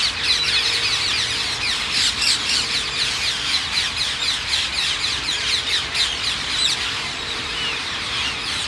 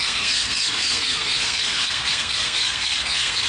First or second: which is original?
first